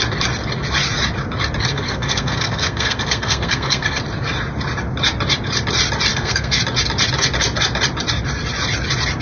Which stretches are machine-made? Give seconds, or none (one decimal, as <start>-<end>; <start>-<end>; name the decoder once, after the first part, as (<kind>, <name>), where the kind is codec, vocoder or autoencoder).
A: 1.7-4.0 (codec, SNAC); 6.1-6.6